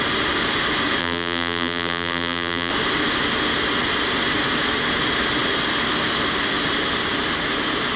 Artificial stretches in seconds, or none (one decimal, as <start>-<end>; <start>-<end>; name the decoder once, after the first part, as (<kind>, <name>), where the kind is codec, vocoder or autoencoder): 1.0-2.7 (vocoder, BigVGAN v2)

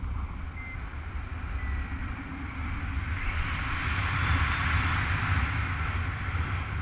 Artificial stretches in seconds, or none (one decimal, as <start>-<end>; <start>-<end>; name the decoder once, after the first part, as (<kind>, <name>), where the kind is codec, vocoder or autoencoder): none

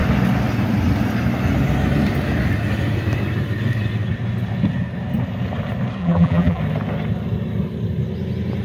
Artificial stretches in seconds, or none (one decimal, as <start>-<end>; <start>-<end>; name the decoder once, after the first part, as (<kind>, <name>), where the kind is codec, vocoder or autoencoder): 6.0-6.6 (vocoder, BigVGAN v2)

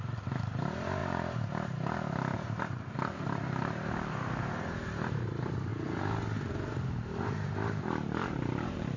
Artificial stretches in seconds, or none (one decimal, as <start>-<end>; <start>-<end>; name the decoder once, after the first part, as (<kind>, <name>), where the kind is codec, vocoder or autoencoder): 0.0-5.7 (vocoder, BigVGAN v2); 6.8-9.0

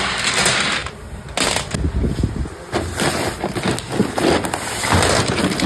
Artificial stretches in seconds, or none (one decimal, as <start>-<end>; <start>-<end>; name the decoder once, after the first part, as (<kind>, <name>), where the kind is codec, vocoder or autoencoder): none

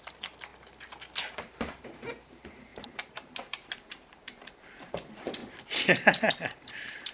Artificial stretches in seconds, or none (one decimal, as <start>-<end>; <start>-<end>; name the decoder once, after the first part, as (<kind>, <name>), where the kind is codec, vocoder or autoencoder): 0.0-0.5 (vocoder, BigVGAN v2); 1.2-5.4; 6.3-7.1